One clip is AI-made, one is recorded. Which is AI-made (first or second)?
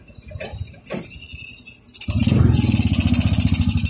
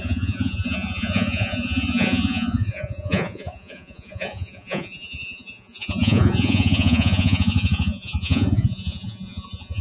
second